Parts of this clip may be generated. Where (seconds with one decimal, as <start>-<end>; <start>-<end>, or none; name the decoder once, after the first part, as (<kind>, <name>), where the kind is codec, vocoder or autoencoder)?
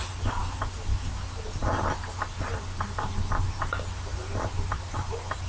none